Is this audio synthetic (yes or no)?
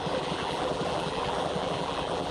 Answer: yes